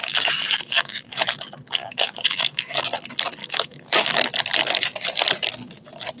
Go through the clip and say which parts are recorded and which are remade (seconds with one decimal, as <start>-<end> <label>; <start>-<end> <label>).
0.0-1.2 remade; 1.2-1.8 recorded; 1.8-2.8 remade; 2.8-3.4 recorded; 3.4-4.1 remade; 4.1-6.2 recorded